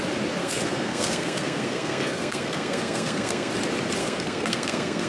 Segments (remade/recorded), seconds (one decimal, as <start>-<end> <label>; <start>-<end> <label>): 0.0-0.4 recorded; 0.4-3.5 remade; 3.5-4.0 recorded; 4.0-5.1 remade